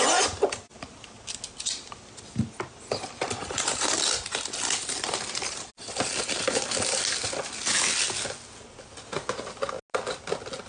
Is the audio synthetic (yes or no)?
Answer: no